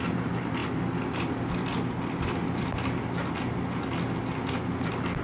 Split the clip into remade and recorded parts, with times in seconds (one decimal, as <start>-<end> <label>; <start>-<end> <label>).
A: 0.0-5.2 recorded